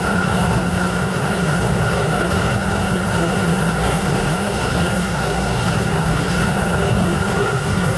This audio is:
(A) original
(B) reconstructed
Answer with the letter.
B